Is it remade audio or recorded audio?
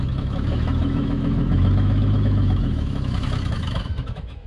remade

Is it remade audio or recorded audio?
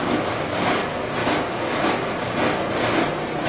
recorded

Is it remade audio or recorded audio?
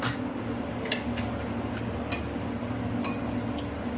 recorded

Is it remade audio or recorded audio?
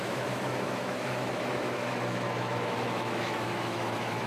remade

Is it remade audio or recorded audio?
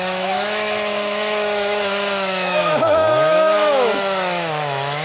remade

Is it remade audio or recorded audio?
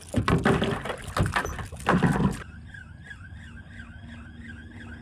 recorded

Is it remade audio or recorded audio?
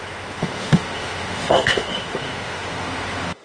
remade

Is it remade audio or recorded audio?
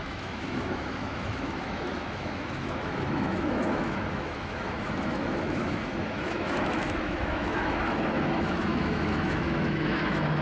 remade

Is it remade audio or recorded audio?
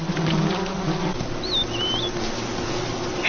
recorded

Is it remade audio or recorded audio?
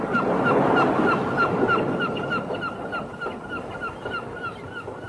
recorded